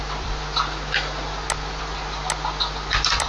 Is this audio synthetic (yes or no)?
no